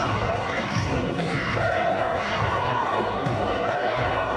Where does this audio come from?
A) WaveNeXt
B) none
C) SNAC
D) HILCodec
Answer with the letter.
C